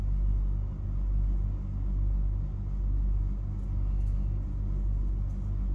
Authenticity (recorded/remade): recorded